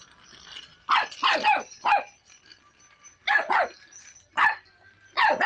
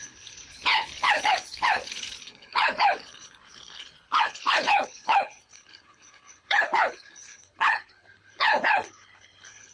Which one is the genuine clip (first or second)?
first